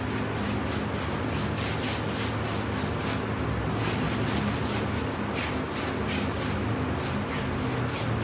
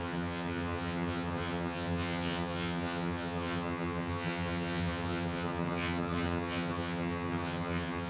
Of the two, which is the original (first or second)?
first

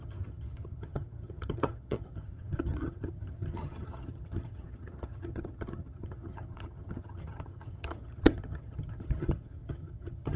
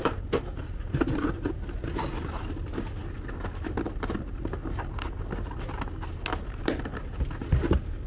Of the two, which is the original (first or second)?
second